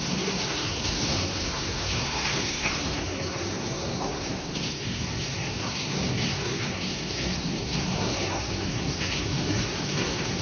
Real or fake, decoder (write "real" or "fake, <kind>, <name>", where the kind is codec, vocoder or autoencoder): fake, codec, SNAC